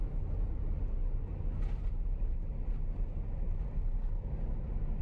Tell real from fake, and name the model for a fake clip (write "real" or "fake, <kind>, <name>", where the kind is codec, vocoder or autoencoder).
real